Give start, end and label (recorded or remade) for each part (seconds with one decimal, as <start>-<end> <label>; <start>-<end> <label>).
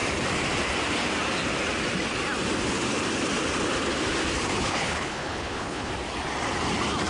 0.0-4.5 recorded; 4.5-5.9 remade; 5.9-7.1 recorded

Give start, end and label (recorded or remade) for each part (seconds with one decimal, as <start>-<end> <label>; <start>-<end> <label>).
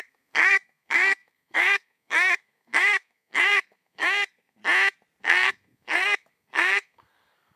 0.0-4.6 remade; 4.6-5.2 recorded; 5.2-7.6 remade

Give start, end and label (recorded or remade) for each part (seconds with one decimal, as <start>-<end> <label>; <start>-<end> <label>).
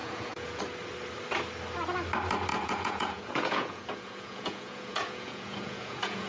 0.0-0.6 remade; 0.6-2.5 recorded; 2.5-6.3 remade